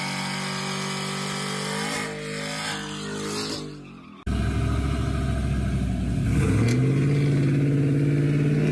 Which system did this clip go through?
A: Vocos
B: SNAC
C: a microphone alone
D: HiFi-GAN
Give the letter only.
C